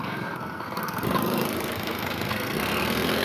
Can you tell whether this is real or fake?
fake